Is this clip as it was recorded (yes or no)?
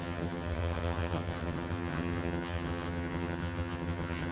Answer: no